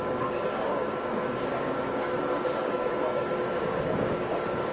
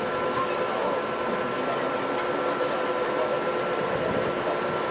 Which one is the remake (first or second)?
first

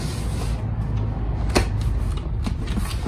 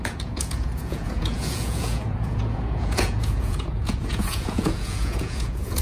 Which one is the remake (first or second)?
second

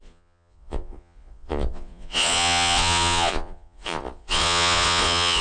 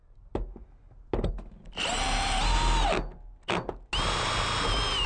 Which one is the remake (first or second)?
first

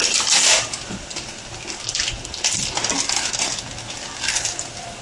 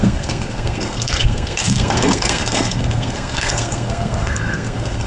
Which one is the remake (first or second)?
second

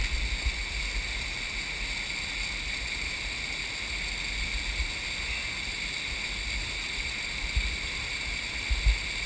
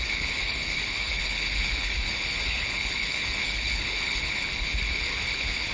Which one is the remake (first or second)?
second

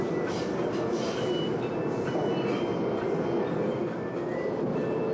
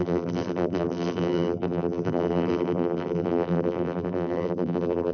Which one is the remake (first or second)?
second